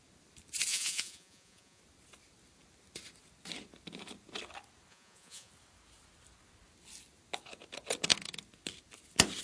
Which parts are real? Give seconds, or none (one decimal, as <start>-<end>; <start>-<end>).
0.0-0.7; 1.8-4.9; 5.5-9.4